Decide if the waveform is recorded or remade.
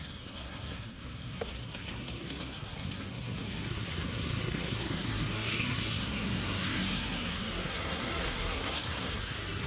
remade